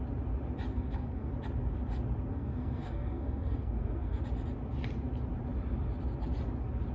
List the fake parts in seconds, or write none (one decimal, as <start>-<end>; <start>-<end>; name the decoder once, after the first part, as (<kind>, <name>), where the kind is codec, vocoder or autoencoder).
0.7-1.3 (codec, SNAC); 2.3-4.2